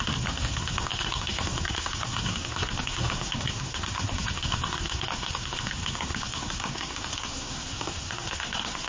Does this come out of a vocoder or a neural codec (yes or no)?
yes